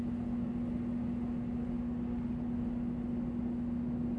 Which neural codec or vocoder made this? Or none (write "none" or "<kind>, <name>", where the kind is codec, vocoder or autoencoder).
none